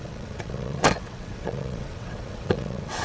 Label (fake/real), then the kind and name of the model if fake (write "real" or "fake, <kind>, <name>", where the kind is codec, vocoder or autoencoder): fake, vocoder, WaveNeXt